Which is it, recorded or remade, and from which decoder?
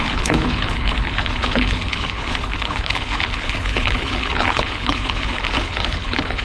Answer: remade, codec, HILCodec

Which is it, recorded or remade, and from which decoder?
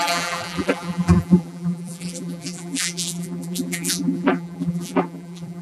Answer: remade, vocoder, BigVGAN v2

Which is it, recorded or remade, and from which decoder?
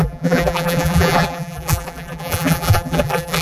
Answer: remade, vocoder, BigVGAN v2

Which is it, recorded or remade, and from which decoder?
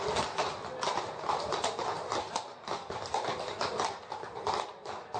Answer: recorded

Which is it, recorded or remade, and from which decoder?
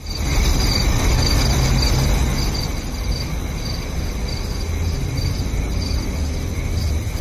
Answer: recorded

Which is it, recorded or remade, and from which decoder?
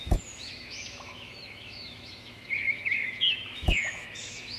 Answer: remade, autoencoder, DAC-VAE